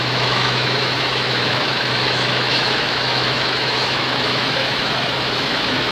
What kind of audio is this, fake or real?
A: fake